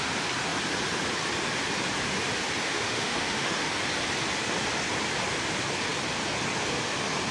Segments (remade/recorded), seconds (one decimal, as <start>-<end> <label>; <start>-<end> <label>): 0.0-2.6 recorded; 2.6-3.7 remade; 3.7-7.3 recorded